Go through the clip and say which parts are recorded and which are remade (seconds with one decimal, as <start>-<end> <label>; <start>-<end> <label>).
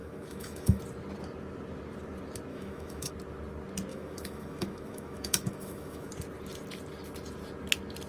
0.0-0.8 remade; 0.8-2.5 recorded; 2.5-3.1 remade; 3.1-3.9 recorded; 3.9-6.1 remade; 6.1-8.1 recorded